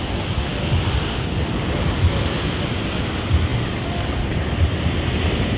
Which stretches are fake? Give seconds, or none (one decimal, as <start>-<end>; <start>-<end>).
none